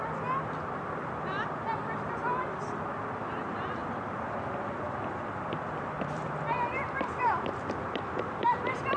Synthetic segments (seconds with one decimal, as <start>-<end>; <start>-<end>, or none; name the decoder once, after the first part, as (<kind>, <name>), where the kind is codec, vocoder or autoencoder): 2.9-9.0 (vocoder, BigVGAN v2)